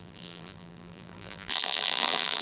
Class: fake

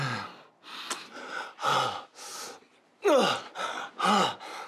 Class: real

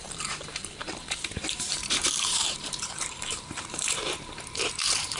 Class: fake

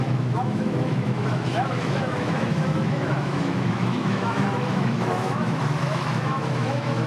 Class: fake